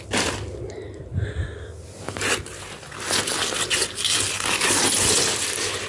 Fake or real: real